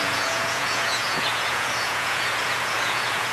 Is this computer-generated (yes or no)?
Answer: yes